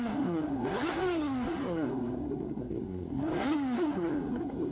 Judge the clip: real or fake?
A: fake